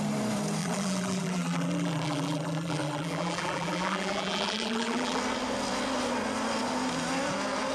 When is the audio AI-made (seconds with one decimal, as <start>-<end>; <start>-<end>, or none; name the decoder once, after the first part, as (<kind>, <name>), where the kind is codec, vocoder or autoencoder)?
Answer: 0.6-5.2 (vocoder, BigVGAN v2)